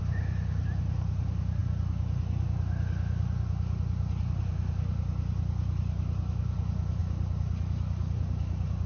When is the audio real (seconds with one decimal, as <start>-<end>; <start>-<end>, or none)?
0.0-8.9